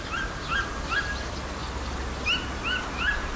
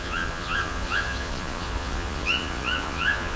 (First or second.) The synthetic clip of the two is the second